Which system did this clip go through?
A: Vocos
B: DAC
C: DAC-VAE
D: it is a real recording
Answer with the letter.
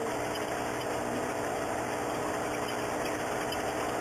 D